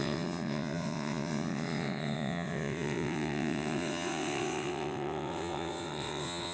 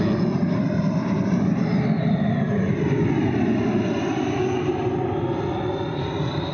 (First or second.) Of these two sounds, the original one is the second